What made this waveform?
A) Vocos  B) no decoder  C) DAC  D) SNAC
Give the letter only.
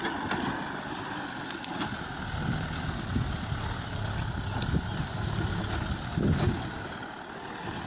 B